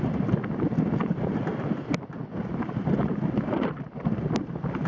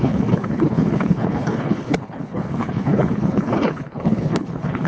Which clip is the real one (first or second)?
first